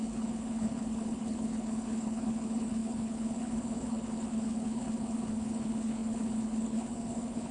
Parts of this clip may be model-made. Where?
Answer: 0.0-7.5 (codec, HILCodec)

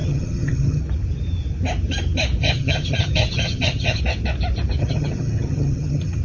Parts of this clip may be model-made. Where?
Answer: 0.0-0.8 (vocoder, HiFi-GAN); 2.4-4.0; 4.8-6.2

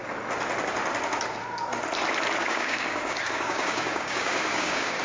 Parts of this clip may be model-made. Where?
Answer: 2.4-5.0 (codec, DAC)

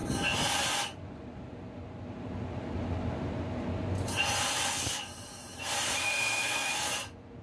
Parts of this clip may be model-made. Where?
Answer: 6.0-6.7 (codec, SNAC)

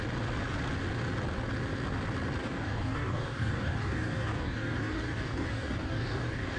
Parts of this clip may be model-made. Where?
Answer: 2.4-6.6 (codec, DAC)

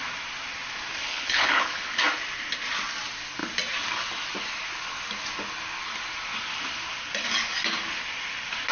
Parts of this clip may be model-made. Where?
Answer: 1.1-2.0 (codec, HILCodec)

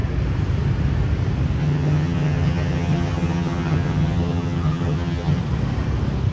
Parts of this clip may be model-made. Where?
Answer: 1.6-5.4 (vocoder, HiFi-GAN)